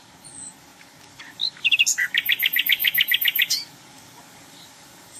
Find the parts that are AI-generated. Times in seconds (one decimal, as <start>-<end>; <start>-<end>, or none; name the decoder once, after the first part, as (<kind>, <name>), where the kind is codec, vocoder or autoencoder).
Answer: 0.0-5.2 (codec, DAC)